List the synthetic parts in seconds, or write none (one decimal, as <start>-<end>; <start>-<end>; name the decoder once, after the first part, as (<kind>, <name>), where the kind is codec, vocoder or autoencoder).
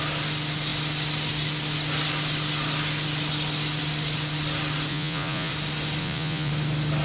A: 4.9-5.5 (vocoder, Vocos); 6.0-6.5